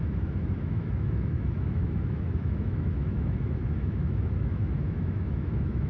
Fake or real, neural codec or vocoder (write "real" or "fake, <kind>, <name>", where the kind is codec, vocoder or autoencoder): fake, autoencoder, DAC-VAE